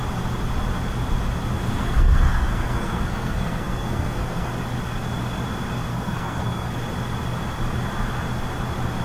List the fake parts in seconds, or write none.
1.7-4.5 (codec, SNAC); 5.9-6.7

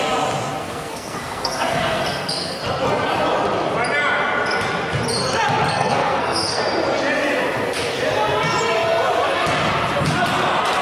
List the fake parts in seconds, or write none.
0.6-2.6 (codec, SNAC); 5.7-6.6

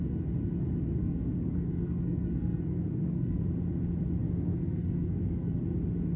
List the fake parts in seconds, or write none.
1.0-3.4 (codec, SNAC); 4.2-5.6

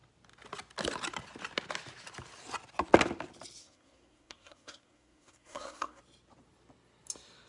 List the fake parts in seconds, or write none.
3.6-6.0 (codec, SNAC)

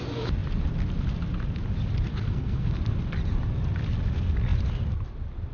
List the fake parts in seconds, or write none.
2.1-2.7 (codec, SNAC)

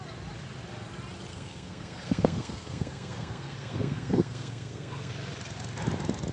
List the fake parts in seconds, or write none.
1.3-5.1 (codec, SNAC)

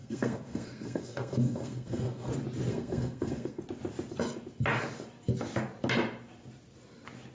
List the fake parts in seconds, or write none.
0.0-2.3 (codec, SNAC); 2.7-3.6